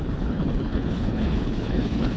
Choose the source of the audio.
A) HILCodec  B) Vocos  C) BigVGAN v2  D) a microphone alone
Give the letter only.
A